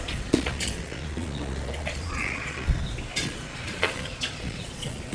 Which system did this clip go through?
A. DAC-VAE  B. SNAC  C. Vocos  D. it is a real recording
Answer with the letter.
C